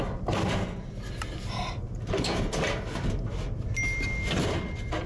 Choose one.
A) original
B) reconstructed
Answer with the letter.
A